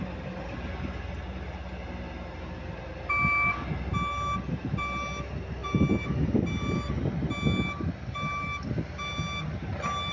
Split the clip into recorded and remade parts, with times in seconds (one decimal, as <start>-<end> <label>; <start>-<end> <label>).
0.0-10.1 recorded